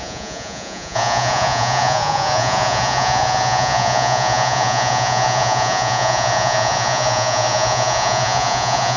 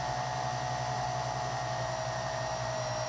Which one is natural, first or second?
second